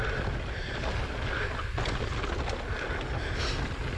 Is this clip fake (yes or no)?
no